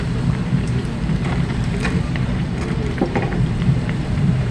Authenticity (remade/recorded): remade